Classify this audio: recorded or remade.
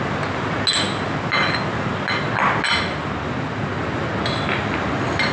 recorded